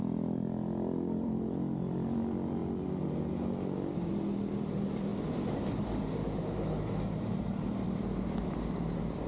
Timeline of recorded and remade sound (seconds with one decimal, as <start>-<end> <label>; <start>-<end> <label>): 0.0-2.6 remade; 2.6-4.6 recorded; 4.6-5.1 remade; 5.1-7.4 recorded; 7.4-9.3 remade